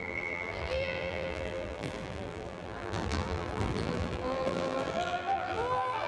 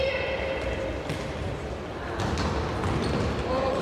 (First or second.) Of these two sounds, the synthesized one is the first